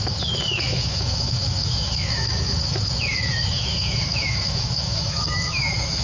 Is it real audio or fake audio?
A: fake